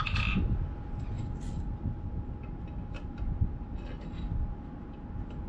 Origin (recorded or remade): recorded